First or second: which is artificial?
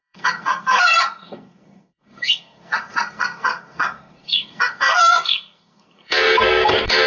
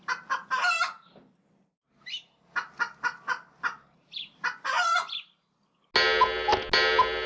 first